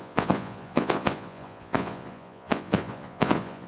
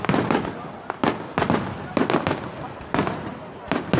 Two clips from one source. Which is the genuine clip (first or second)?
second